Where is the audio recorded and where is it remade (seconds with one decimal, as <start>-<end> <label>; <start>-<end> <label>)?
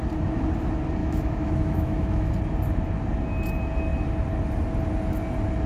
0.0-1.0 recorded; 1.0-2.3 remade; 2.3-5.7 recorded